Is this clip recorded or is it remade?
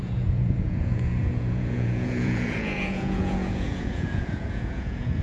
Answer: remade